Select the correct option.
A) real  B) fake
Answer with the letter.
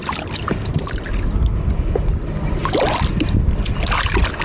A